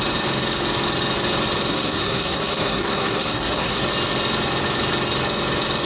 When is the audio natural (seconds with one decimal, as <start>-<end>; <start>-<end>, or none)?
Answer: 0.0-1.7; 3.8-5.9